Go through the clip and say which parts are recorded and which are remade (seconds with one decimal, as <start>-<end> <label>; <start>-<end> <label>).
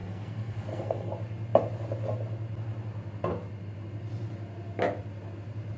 0.0-1.1 remade; 1.1-5.8 recorded